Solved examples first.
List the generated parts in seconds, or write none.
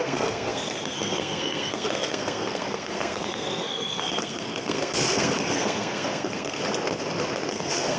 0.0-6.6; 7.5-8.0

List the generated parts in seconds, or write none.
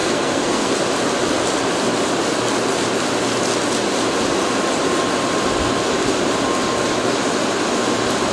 0.0-0.7